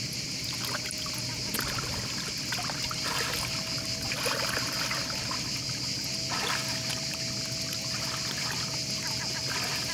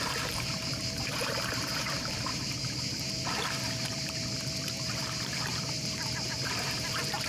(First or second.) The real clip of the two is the first